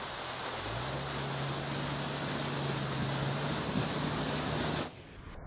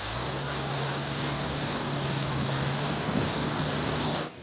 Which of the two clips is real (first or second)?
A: first